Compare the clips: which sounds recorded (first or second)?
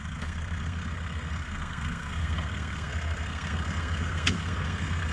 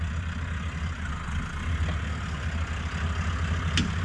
second